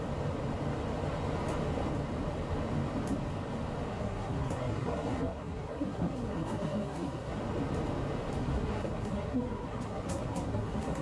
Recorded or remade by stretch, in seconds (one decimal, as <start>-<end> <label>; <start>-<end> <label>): 0.0-3.9 recorded; 3.9-7.4 remade; 7.4-8.4 recorded; 8.4-11.0 remade